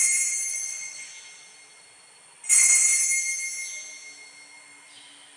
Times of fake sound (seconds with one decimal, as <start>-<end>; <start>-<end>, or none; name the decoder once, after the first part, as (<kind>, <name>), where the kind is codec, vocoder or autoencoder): 0.5-1.1 (vocoder, Vocos)